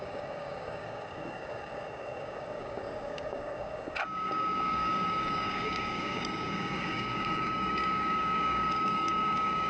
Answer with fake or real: fake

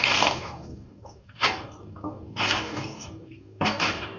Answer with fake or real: fake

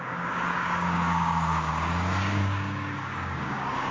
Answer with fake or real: fake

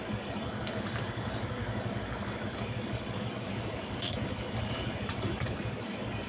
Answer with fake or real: fake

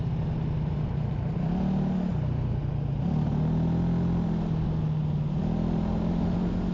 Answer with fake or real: real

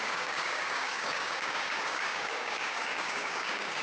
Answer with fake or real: fake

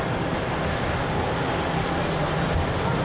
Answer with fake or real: real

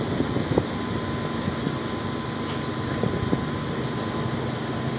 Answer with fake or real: real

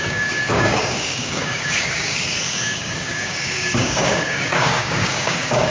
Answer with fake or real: fake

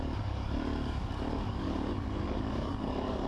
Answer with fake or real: fake